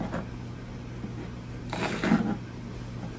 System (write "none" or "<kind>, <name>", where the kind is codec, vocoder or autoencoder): none